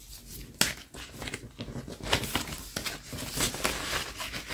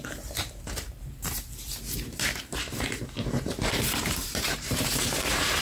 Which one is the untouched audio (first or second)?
first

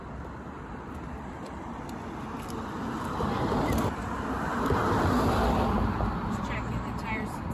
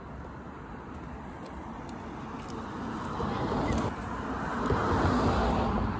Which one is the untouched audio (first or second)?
second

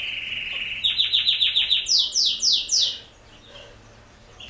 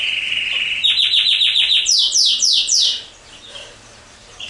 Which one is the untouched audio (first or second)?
first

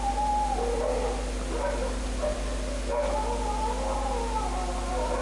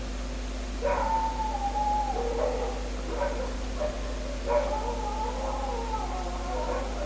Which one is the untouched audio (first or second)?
first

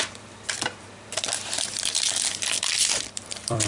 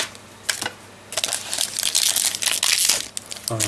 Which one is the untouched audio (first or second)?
second